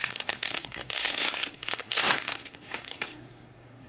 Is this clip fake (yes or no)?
yes